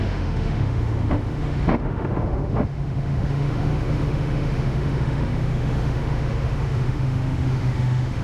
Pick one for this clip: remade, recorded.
remade